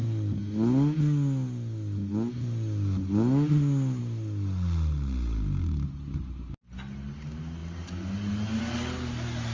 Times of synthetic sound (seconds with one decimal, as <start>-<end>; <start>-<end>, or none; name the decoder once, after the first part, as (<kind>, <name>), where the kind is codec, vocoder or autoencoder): none